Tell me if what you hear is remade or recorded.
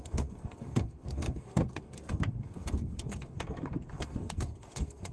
remade